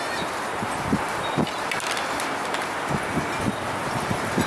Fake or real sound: real